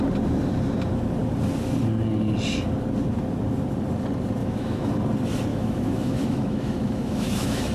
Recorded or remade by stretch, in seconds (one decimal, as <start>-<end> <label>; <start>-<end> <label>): 0.0-4.4 recorded; 4.4-4.9 remade; 4.9-5.5 recorded; 5.5-7.7 remade